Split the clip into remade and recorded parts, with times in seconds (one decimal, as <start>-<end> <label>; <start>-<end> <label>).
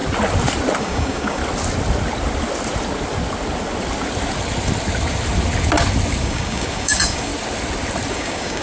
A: 0.0-0.8 recorded; 0.8-1.4 remade; 1.4-6.2 recorded; 6.2-7.3 remade; 7.3-8.1 recorded; 8.1-8.6 remade